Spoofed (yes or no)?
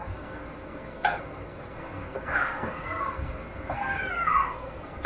yes